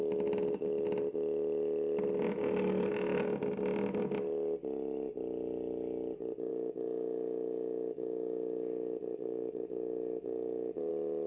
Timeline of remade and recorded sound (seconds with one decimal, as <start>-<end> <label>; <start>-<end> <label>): 0.0-6.5 recorded; 6.5-10.9 remade; 10.9-11.3 recorded